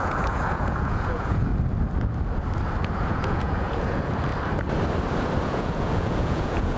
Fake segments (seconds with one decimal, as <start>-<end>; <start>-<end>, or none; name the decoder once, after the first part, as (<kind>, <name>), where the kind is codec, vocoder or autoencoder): 0.0-1.5 (vocoder, Vocos); 2.8-4.3; 5.4-6.8